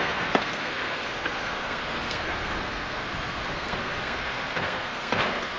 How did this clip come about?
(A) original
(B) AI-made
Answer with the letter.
B